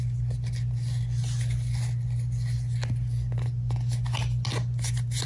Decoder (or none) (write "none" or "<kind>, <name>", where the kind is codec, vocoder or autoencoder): none